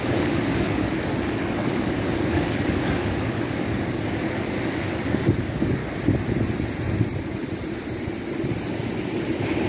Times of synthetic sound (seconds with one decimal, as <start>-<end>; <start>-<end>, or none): 0.0-5.8